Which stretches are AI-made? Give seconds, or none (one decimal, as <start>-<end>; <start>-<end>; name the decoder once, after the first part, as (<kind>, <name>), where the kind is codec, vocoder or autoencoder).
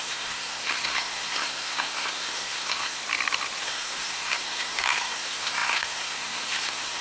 0.0-3.0 (codec, SNAC); 3.6-7.0